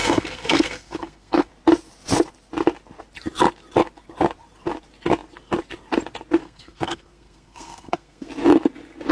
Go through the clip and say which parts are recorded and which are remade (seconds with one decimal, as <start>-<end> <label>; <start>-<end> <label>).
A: 0.0-1.5 remade; 1.5-6.4 recorded; 6.4-8.3 remade; 8.3-9.1 recorded